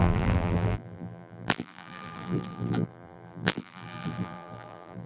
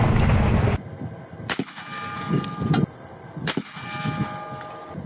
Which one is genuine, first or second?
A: second